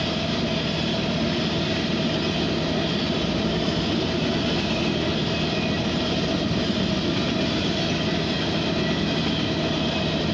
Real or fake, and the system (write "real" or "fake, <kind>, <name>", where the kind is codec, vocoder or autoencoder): real